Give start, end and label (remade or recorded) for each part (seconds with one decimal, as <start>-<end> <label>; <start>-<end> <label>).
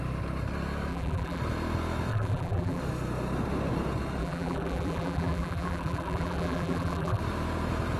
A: 0.0-0.9 recorded; 0.9-1.4 remade; 1.4-2.1 recorded; 2.1-2.8 remade; 2.8-4.2 recorded; 4.2-7.2 remade; 7.2-8.0 recorded